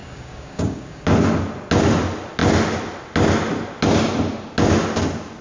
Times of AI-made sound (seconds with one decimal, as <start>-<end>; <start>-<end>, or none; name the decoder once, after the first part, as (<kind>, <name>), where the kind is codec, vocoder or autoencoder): 0.0-1.0 (codec, DAC)